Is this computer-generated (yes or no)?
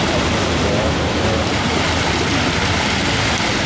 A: yes